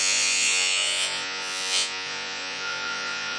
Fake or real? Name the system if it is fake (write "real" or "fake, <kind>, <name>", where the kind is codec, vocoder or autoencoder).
fake, vocoder, Vocos